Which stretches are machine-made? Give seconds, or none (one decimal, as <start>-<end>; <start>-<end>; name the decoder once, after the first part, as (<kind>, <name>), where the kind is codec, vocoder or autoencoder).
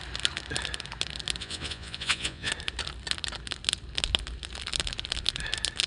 1.4-2.5 (vocoder, Vocos)